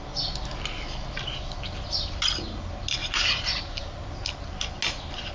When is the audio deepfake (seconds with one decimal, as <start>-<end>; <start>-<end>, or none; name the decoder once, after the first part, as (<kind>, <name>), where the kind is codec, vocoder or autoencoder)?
3.0-3.8 (vocoder, BigVGAN v2)